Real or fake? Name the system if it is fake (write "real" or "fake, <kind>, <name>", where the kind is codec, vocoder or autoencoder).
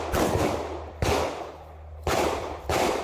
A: real